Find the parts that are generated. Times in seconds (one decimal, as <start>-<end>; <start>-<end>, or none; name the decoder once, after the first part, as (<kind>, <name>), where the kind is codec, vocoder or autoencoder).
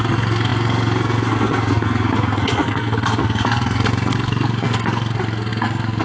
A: 0.0-6.0 (codec, SNAC)